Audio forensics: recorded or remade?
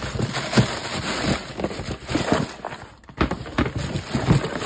recorded